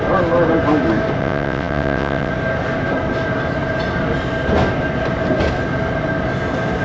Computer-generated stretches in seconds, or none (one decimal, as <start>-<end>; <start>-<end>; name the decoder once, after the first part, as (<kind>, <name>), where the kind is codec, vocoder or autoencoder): 1.2-2.3 (vocoder, WaveNeXt)